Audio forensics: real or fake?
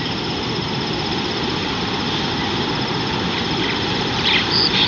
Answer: real